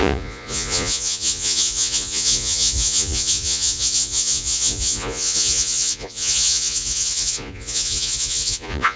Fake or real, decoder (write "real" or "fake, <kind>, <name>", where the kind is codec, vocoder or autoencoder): fake, vocoder, Vocos